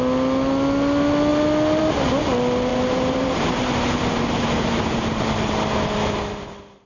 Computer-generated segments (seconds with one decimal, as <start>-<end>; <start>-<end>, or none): 2.7-5.2